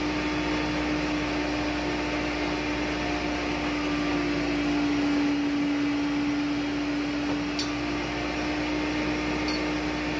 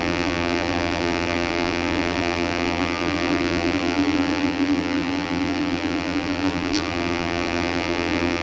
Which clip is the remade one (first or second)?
second